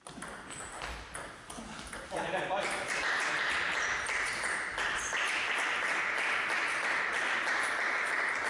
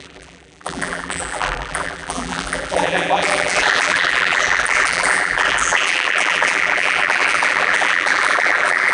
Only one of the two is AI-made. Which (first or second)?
second